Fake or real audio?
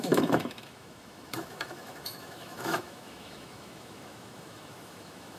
fake